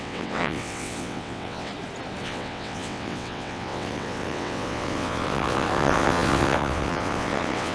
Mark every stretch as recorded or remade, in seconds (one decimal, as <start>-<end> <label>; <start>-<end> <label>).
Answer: 0.0-1.7 remade; 1.7-2.2 recorded; 2.2-7.7 remade